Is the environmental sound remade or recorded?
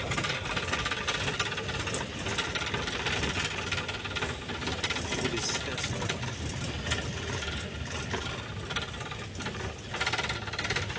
recorded